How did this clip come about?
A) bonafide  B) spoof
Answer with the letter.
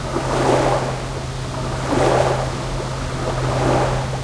A